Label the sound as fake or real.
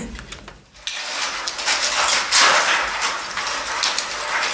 real